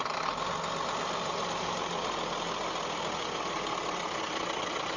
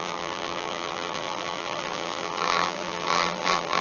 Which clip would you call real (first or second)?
first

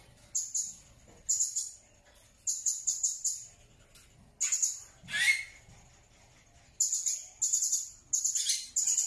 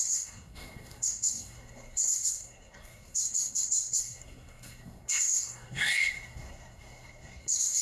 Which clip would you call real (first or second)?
first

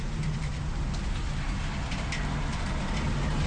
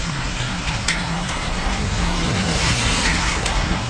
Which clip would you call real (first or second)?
first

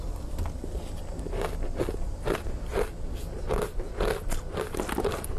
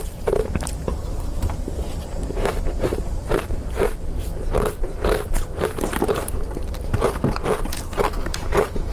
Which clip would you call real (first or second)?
first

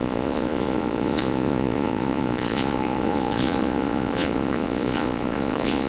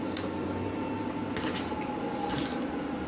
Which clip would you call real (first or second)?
second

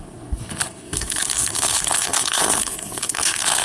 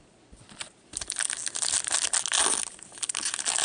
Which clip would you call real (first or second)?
second